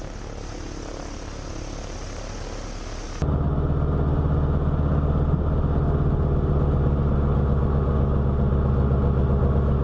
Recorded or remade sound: recorded